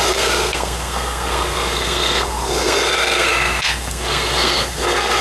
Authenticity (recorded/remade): remade